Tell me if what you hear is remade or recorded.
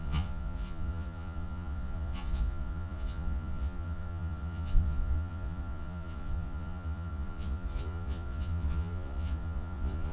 remade